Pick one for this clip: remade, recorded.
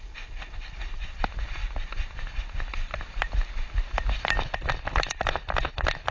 recorded